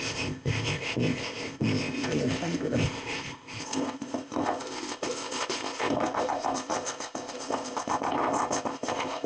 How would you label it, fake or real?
fake